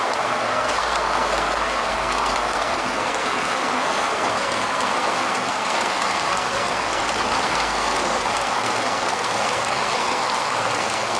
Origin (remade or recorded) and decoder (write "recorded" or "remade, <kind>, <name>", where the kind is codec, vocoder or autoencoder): remade, codec, SNAC